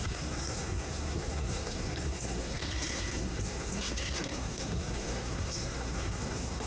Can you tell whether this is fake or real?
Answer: fake